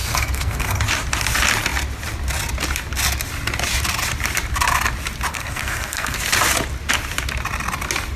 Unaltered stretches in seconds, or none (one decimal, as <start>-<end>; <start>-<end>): 0.8-5.3; 6.2-8.2

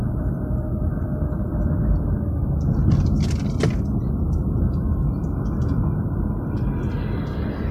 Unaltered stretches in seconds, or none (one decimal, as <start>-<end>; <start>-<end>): 0.0-7.7

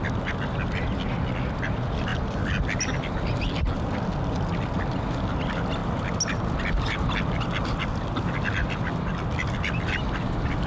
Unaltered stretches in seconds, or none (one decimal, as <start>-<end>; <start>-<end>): 0.0-10.7